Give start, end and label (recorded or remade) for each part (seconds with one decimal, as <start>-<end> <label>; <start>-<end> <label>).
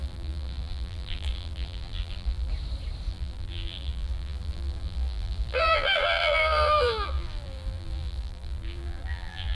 0.0-2.5 remade; 2.5-3.1 recorded; 3.1-9.5 remade